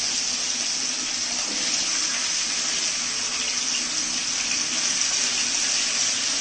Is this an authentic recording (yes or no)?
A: yes